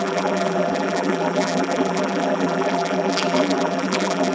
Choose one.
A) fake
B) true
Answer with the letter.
A